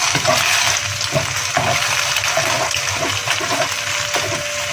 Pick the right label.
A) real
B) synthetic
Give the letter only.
A